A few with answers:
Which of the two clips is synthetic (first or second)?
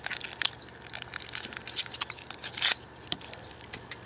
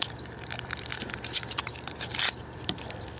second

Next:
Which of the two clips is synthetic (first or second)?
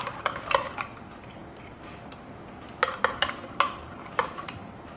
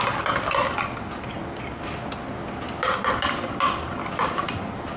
first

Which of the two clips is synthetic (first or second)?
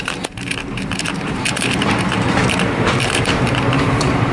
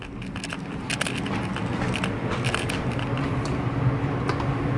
first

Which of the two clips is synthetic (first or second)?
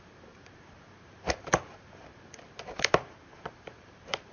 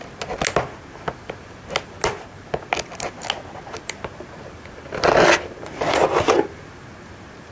first